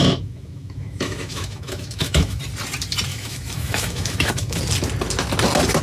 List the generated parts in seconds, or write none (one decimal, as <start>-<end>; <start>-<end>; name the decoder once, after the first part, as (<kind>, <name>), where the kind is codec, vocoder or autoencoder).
0.0-2.4 (autoencoder, DAC-VAE); 3.1-4.6